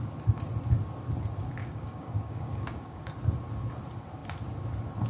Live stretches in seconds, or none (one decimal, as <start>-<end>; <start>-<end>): 0.0-1.6; 3.1-5.1